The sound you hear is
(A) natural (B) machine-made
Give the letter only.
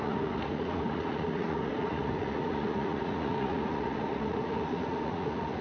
B